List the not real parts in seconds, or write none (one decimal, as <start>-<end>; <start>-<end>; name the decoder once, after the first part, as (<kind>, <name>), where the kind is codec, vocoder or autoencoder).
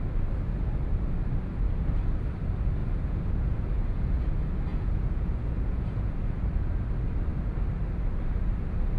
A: 2.8-4.3 (vocoder, Vocos); 4.7-6.4